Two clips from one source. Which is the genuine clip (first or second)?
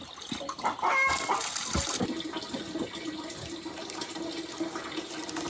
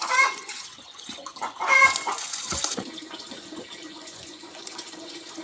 first